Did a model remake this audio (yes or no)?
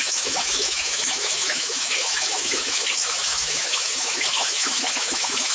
yes